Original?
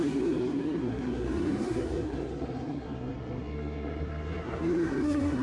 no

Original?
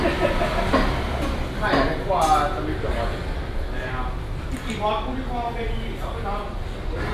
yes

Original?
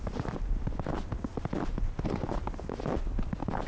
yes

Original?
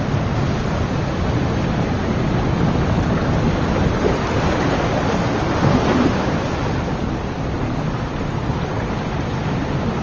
yes